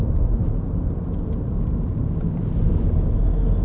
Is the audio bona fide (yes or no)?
no